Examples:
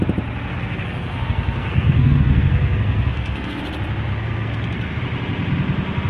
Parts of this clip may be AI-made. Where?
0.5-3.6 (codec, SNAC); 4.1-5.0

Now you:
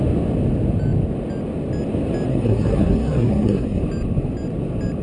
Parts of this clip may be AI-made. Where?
2.3-3.8 (codec, SNAC)

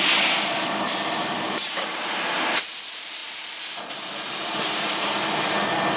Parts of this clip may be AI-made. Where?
none

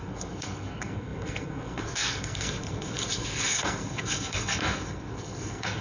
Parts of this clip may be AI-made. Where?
0.0-5.8 (codec, SNAC)

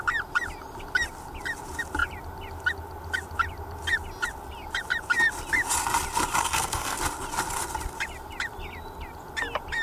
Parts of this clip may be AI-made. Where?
6.4-7.0 (codec, SNAC)

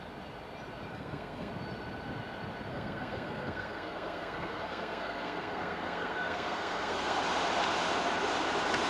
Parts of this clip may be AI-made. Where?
0.9-1.5 (codec, SNAC); 2.7-7.2